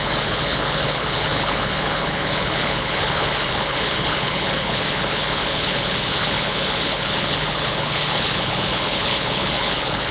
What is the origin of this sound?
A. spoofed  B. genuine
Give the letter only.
A